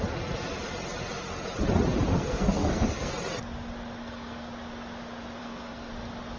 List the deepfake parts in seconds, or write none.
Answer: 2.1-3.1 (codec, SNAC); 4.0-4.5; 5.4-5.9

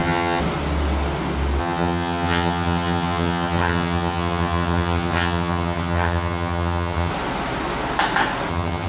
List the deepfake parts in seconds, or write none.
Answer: 0.0-0.4 (vocoder, HiFi-GAN); 1.6-7.1; 8.5-8.9